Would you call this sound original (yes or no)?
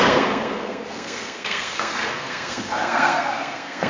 no